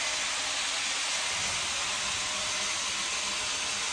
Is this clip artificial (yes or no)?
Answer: no